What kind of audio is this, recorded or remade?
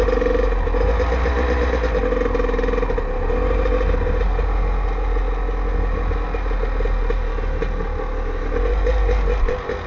recorded